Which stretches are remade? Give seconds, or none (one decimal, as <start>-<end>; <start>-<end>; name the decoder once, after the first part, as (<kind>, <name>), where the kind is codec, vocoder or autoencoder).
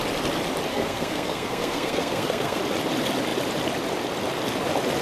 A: 0.7-2.6 (codec, SNAC)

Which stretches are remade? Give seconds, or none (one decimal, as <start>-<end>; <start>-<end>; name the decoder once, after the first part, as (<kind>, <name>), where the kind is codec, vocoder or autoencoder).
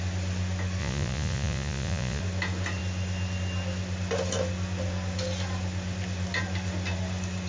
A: 0.8-2.2 (vocoder, Vocos)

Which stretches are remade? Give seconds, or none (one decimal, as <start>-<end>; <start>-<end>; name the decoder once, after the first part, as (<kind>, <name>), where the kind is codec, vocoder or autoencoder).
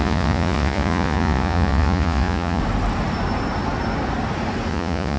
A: 0.0-2.6 (vocoder, Vocos); 4.7-5.2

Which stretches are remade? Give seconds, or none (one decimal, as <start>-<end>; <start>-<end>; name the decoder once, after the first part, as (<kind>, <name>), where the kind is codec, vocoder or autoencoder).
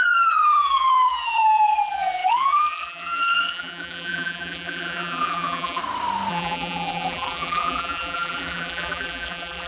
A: 0.0-5.8 (vocoder, BigVGAN v2); 6.3-9.7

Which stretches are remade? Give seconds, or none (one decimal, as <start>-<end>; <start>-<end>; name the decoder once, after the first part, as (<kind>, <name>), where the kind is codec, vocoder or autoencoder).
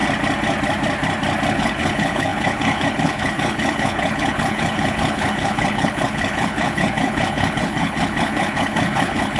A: 1.5-9.4 (codec, HILCodec)